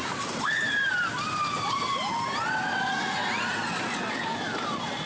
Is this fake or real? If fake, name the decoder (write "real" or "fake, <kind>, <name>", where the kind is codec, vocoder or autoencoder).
real